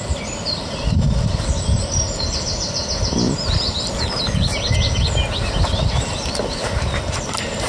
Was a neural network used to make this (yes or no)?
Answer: no